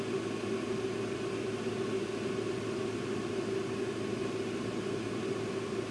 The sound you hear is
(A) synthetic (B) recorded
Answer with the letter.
B